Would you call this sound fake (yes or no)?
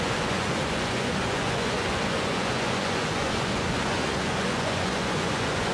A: yes